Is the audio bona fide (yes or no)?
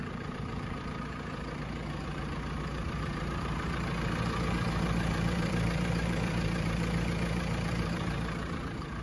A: no